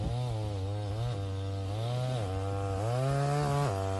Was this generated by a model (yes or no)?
no